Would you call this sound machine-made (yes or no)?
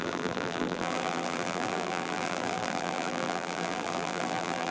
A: yes